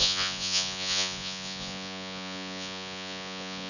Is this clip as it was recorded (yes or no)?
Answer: no